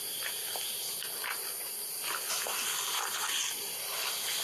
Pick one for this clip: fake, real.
real